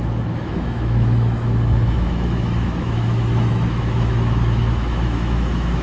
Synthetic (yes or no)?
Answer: yes